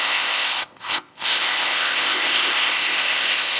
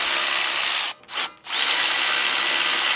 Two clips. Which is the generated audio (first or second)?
first